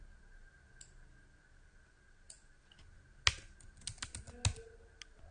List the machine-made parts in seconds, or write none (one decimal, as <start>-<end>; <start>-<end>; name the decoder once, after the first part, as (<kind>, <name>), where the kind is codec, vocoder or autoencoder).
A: none